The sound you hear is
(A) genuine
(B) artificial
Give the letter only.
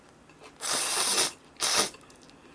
A